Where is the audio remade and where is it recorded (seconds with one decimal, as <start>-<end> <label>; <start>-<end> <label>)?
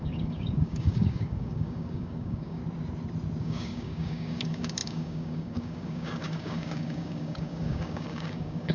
0.0-2.6 remade; 2.6-3.4 recorded; 3.4-8.7 remade